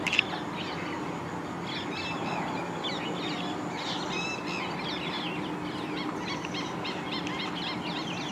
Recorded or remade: recorded